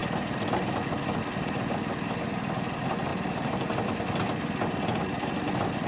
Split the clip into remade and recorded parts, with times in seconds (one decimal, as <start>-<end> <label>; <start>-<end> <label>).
0.0-5.9 recorded